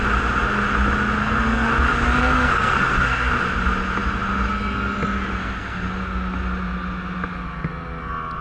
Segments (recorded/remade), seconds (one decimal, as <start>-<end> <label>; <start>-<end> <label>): 0.0-1.2 recorded; 1.2-1.7 remade; 1.7-2.2 recorded; 2.2-3.3 remade; 3.3-5.4 recorded; 5.4-5.9 remade; 5.9-8.4 recorded